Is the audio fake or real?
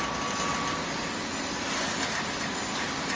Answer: real